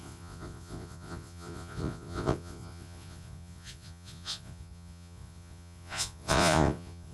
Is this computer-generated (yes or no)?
yes